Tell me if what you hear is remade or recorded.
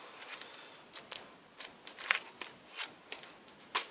recorded